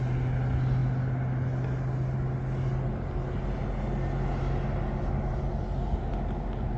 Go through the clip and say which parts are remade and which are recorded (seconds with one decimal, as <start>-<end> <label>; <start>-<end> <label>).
0.0-6.8 recorded